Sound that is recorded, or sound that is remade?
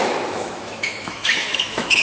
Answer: remade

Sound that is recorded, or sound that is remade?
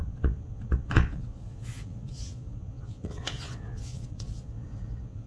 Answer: remade